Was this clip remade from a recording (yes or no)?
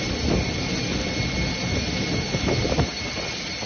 no